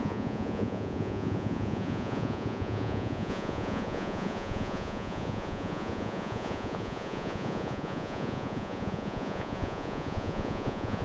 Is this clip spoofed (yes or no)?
yes